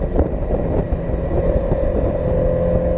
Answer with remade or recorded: recorded